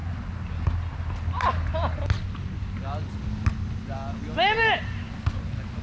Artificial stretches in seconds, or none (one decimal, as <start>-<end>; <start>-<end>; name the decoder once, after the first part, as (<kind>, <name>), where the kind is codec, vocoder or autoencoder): none